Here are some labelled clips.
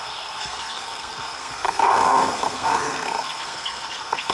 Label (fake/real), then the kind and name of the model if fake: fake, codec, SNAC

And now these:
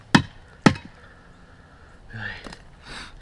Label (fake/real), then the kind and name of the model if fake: real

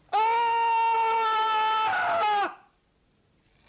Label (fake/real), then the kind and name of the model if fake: real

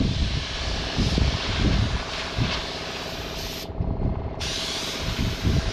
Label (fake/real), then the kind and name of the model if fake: real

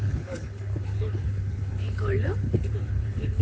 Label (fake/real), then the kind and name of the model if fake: fake, codec, HILCodec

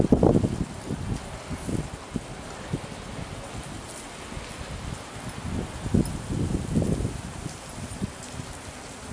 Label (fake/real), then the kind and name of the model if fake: real